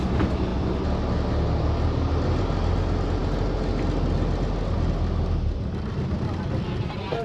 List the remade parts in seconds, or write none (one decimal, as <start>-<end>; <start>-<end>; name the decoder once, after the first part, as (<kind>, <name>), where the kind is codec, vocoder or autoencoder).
none